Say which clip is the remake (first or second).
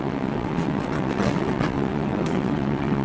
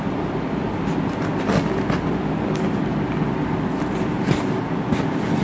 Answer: first